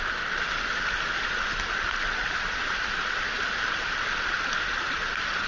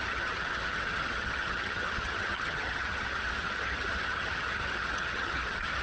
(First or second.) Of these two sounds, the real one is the first